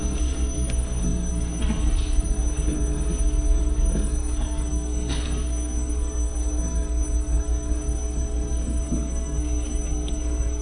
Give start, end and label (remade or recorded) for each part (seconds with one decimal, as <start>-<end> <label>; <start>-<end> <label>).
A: 0.0-10.6 remade